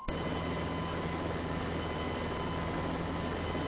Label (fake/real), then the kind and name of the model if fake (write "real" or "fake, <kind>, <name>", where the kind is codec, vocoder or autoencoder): real